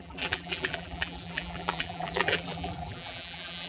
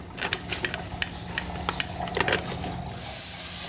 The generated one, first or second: first